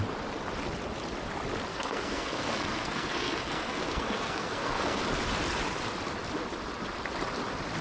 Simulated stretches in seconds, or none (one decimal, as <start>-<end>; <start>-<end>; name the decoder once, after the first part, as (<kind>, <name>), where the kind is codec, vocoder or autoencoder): 1.7-5.0 (codec, SNAC)